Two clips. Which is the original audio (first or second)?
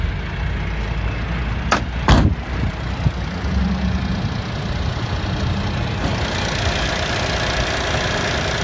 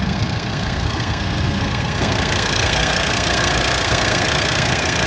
first